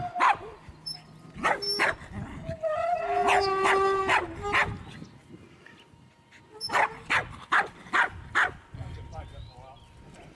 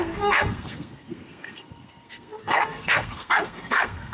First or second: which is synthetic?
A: second